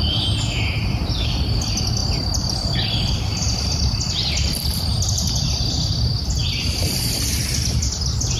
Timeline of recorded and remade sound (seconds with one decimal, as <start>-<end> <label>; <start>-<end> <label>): 0.0-2.0 recorded; 2.0-5.3 remade; 5.3-6.4 recorded; 6.4-7.4 remade; 7.4-8.4 recorded